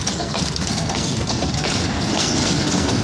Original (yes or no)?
no